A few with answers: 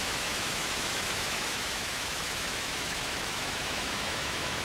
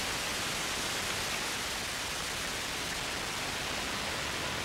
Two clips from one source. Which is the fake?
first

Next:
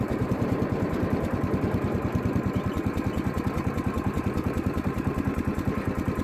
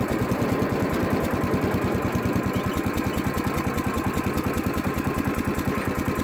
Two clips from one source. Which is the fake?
first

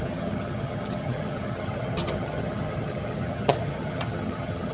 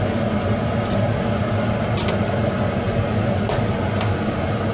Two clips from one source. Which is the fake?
first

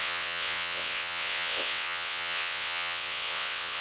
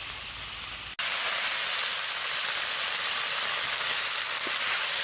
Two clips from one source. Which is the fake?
first